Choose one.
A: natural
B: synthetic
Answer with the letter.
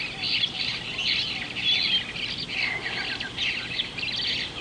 A